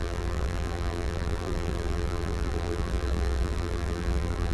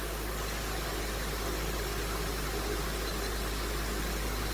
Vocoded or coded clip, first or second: first